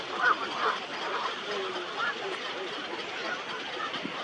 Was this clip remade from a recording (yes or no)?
no